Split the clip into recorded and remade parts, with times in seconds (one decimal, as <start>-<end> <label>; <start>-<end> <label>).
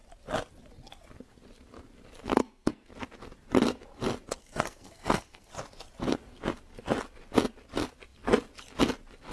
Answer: 0.0-2.4 recorded; 2.4-2.9 remade; 2.9-4.4 recorded; 4.4-5.5 remade; 5.5-9.3 recorded